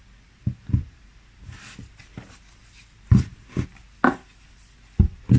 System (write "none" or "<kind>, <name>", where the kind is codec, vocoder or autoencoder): none